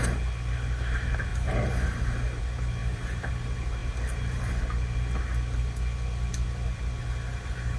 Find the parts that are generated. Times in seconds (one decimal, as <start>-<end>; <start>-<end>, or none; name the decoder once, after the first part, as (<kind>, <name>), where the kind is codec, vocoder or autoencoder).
1.3-2.4 (vocoder, BigVGAN v2); 2.8-3.3; 3.8-4.5